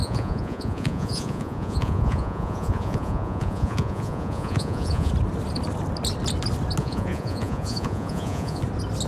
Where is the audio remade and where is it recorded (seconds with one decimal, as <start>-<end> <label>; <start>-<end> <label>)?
0.0-5.1 remade; 5.1-6.8 recorded; 6.8-8.6 remade; 8.6-9.1 recorded